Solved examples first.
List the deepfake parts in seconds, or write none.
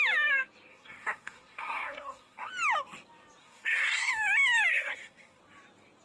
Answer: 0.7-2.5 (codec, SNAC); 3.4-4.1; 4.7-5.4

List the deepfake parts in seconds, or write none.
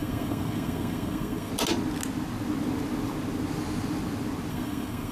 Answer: 0.0-1.5 (codec, SNAC); 4.5-5.1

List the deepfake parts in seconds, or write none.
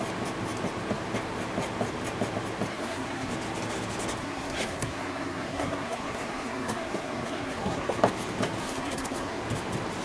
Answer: 2.7-3.3 (codec, SNAC); 4.2-8.0; 8.6-9.4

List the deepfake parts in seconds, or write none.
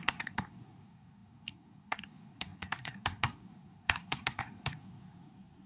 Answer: 0.0-5.7 (codec, SNAC)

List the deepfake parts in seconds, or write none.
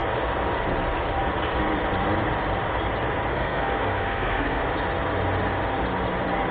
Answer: 3.3-4.6 (codec, SNAC)